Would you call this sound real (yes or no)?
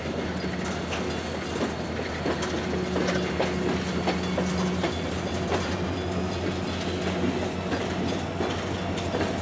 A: yes